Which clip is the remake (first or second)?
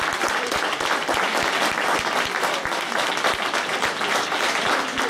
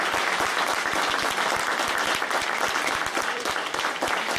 first